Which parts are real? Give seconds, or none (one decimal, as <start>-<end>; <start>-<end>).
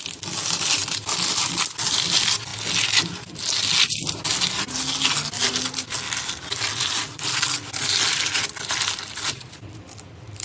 0.0-10.4